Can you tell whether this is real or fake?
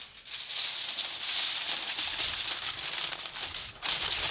real